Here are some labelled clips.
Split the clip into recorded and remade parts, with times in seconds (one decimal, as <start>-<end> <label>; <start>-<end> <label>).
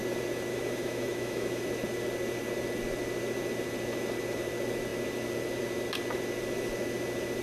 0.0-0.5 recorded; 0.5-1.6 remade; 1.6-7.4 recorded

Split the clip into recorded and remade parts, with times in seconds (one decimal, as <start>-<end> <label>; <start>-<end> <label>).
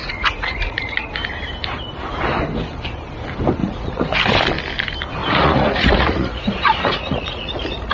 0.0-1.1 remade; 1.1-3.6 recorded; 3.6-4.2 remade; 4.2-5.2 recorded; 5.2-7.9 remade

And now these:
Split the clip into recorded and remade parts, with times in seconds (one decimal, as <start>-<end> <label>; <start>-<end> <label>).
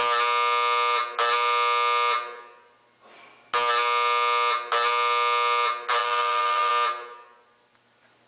0.0-6.0 recorded; 6.0-6.7 remade; 6.7-8.3 recorded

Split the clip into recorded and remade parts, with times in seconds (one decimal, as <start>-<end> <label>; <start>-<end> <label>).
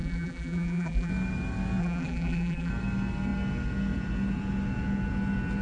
0.0-1.1 remade; 1.1-1.8 recorded; 1.8-2.7 remade; 2.7-5.6 recorded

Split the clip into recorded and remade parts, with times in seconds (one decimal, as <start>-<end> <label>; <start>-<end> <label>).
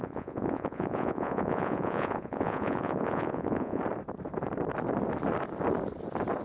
0.0-3.8 remade; 3.8-6.4 recorded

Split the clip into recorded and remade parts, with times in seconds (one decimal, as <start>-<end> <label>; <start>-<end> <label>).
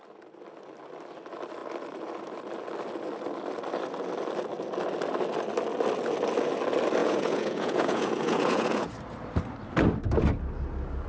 0.0-7.0 recorded; 7.0-8.9 remade; 8.9-11.1 recorded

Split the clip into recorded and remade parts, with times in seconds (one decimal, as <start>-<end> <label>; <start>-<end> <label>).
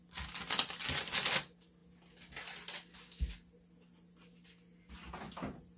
0.0-5.8 recorded